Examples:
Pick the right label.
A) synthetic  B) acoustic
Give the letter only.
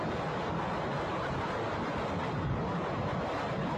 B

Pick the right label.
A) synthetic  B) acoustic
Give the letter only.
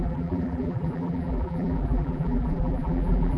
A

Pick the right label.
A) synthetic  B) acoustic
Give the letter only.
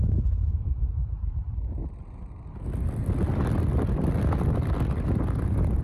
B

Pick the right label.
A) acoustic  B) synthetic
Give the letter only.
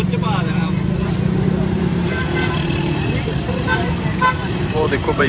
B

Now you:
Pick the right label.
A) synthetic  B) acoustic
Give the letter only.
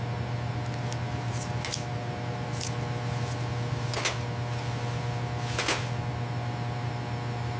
B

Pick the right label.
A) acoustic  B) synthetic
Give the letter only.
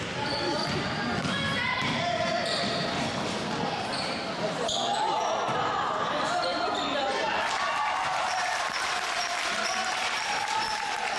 B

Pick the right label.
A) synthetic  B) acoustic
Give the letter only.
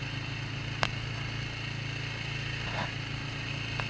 B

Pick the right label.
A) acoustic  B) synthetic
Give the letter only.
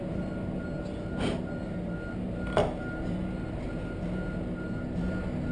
A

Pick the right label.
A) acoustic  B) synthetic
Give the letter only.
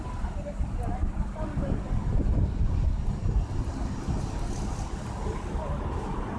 A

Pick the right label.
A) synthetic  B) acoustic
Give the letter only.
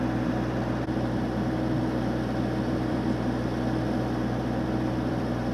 A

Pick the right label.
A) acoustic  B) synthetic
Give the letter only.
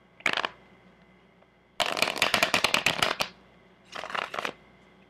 A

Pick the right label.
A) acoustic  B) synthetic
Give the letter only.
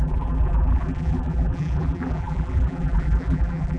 B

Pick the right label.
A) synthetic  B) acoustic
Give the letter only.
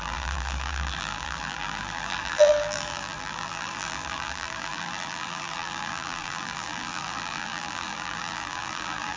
A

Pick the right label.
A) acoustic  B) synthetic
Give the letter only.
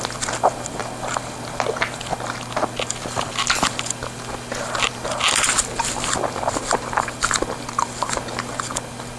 A